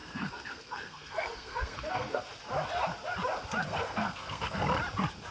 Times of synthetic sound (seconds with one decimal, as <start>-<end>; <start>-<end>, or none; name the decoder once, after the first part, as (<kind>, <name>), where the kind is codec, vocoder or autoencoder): 0.0-2.2 (codec, SNAC); 3.6-4.6